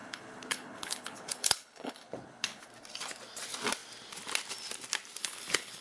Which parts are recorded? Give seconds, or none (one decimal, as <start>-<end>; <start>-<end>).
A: 2.6-5.2